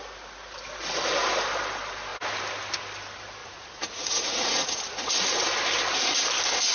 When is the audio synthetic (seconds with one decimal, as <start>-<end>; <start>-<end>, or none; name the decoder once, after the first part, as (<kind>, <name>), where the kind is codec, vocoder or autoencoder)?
3.4-4.9 (vocoder, Vocos)